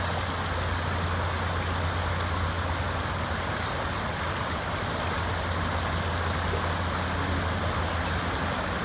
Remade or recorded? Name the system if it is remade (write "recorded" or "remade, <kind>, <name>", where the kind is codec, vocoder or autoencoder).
recorded